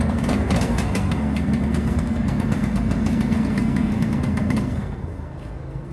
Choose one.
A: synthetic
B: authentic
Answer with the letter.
A